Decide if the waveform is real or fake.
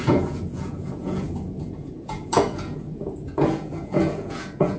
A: fake